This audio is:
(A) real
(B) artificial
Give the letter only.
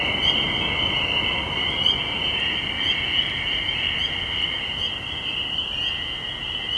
A